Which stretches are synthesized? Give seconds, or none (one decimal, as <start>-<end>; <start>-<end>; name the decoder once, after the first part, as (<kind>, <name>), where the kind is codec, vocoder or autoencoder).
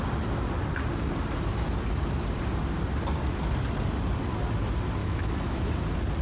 5.0-5.7 (autoencoder, DAC-VAE)